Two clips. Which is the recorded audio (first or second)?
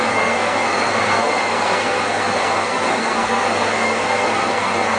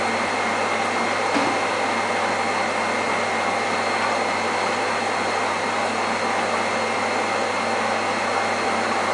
second